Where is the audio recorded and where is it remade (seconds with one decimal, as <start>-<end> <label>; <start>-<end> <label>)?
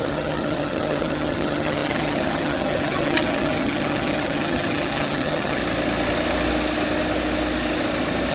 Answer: 0.0-5.6 remade; 5.6-8.3 recorded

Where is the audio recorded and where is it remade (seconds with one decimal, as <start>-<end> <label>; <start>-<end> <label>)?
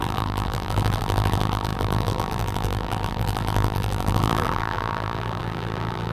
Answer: 0.0-6.1 remade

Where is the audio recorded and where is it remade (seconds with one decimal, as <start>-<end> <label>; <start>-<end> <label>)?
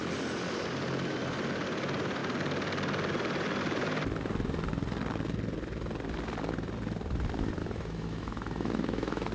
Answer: 0.0-7.6 recorded; 7.6-9.3 remade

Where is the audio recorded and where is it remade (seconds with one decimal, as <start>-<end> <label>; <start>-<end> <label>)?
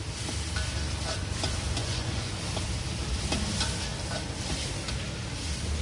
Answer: 0.0-1.8 recorded; 1.8-2.3 remade; 2.3-5.8 recorded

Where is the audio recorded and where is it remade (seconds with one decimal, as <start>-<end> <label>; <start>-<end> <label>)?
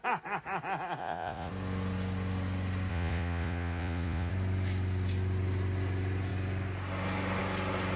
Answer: 0.0-1.0 recorded; 1.0-1.5 remade; 1.5-2.9 recorded; 2.9-4.3 remade; 4.3-8.0 recorded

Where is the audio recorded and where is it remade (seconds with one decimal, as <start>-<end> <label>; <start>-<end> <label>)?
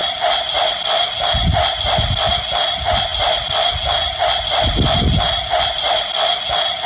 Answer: 0.0-6.9 recorded